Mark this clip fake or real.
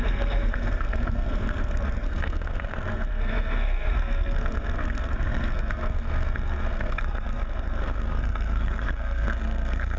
fake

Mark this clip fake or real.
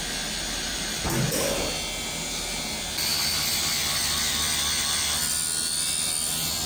real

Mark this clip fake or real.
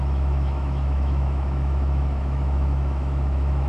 fake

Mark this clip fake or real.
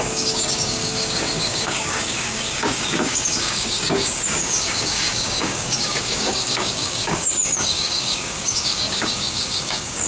fake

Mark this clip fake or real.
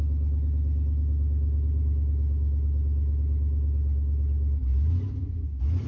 real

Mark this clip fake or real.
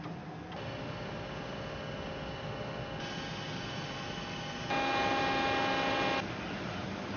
real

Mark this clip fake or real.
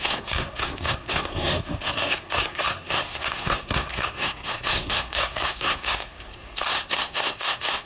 fake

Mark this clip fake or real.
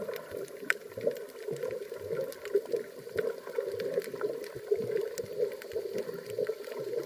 real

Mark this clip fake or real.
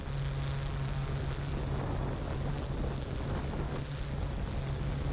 real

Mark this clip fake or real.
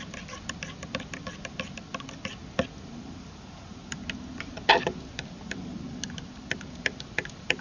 real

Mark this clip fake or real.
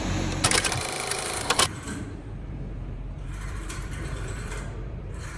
fake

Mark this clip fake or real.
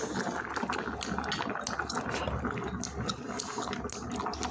real